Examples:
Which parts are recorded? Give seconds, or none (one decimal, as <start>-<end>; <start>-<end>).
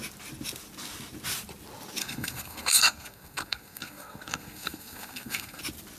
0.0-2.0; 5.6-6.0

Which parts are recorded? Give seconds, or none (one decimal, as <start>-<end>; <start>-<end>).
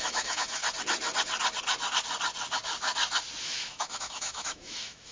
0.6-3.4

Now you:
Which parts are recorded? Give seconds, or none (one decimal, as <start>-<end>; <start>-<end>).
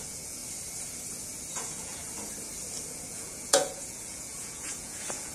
0.4-1.5; 2.0-3.1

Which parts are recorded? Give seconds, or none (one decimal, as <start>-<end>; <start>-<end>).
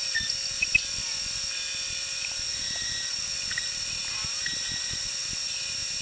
4.0-4.8; 5.2-6.0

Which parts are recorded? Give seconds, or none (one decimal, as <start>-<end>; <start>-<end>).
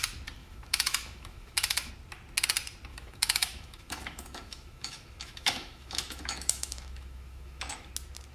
0.0-0.4; 1.9-2.9; 7.9-8.3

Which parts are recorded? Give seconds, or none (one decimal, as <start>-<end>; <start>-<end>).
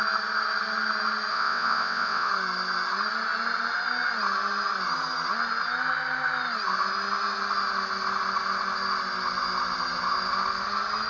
0.0-1.3; 2.3-11.1